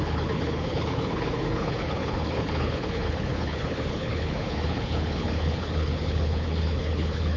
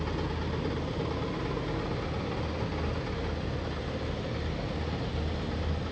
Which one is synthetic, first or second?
first